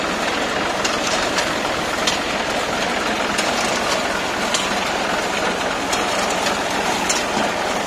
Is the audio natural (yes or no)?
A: yes